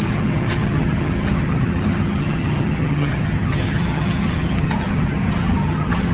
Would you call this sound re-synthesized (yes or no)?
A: yes